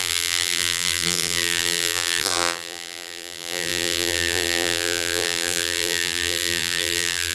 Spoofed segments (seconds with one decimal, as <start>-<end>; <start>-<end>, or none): 0.0-7.3